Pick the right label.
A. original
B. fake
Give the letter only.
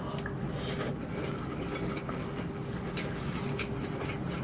A